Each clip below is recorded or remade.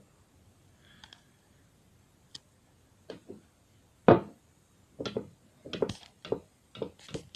recorded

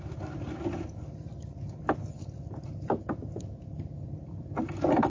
recorded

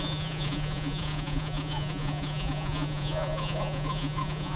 remade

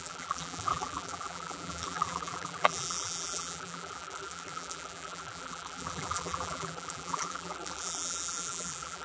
remade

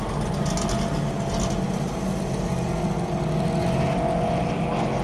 recorded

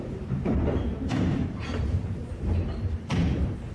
remade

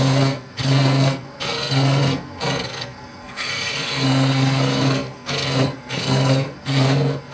remade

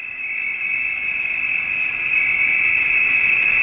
recorded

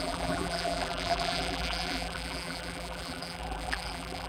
remade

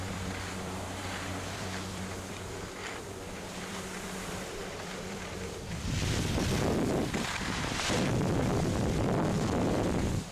remade